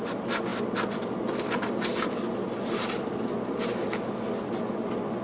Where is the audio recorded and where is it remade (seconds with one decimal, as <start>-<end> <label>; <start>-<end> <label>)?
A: 0.0-0.5 recorded; 0.5-3.6 remade; 3.6-5.2 recorded